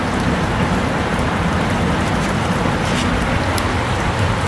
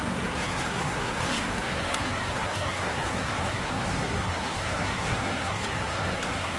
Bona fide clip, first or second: first